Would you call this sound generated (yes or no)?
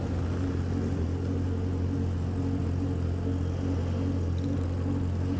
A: no